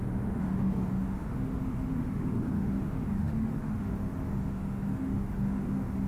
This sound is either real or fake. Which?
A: fake